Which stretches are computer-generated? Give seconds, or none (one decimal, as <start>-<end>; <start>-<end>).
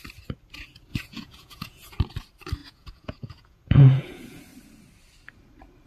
0.9-2.0; 2.6-4.4